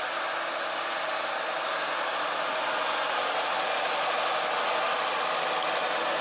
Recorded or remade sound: recorded